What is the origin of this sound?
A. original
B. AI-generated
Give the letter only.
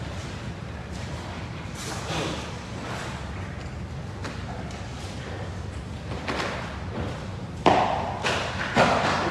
A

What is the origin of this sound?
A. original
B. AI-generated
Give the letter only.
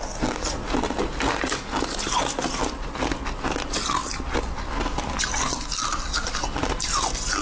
A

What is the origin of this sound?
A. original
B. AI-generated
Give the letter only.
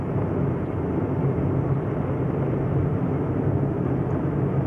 A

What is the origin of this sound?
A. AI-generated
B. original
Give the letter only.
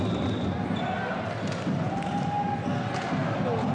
B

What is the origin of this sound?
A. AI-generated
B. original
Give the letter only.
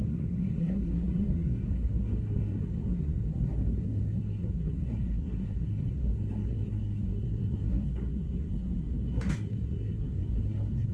A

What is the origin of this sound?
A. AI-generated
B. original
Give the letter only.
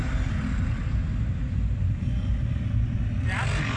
B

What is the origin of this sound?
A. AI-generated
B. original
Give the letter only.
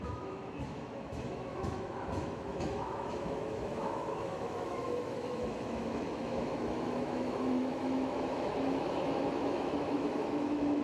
A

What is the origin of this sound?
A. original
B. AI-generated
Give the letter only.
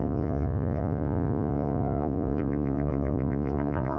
B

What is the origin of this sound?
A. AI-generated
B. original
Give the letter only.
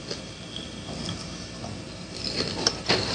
B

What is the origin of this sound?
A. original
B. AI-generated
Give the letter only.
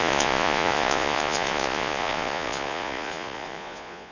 B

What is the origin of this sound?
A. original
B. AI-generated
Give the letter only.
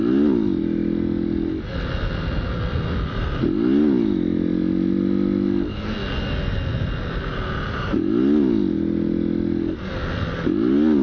A